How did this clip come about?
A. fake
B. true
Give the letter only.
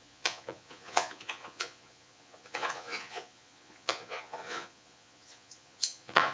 A